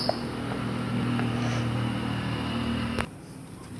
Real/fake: real